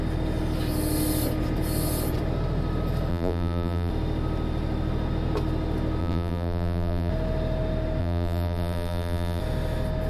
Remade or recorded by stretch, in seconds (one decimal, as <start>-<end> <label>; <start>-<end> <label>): 0.0-3.1 recorded; 3.1-3.9 remade; 3.9-6.0 recorded; 6.0-7.1 remade; 7.1-8.0 recorded; 8.0-9.4 remade; 9.4-10.1 recorded

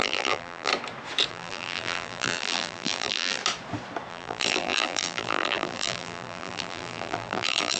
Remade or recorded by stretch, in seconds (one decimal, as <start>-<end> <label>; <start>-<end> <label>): 0.0-0.7 remade; 0.7-1.3 recorded; 1.3-3.4 remade; 3.4-4.1 recorded; 4.1-7.8 remade

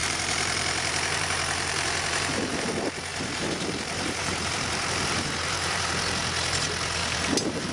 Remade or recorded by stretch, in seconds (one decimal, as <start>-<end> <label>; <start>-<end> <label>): 0.0-2.7 remade; 2.7-3.1 recorded; 3.1-5.9 remade; 5.9-7.0 recorded; 7.0-7.7 remade

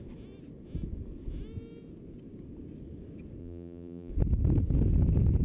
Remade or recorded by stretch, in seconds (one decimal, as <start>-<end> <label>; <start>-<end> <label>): 0.0-3.4 recorded; 3.4-4.1 remade; 4.1-5.4 recorded

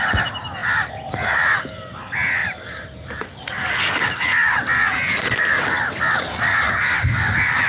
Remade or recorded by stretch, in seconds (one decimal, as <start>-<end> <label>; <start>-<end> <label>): 0.0-2.4 recorded; 2.4-3.2 remade; 3.2-7.7 recorded